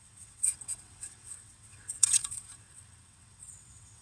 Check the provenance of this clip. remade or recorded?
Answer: remade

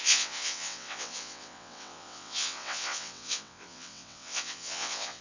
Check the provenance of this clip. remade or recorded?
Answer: remade